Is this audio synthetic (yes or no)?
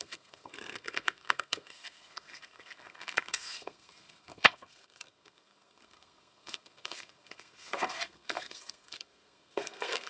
yes